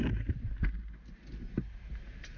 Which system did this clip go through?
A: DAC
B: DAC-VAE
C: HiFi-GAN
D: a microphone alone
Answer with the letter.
D